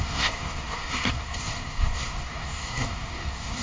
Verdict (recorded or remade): remade